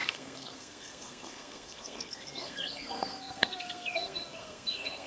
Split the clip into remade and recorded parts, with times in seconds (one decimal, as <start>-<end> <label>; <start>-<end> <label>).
0.0-5.1 remade